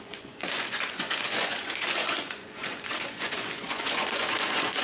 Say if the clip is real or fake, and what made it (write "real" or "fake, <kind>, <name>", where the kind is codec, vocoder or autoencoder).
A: fake, vocoder, Vocos